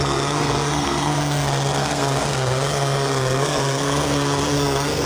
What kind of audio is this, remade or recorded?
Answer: remade